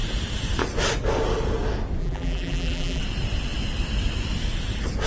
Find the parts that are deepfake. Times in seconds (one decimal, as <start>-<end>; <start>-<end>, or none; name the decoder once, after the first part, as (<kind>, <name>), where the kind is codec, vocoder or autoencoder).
2.0-3.0 (vocoder, BigVGAN v2)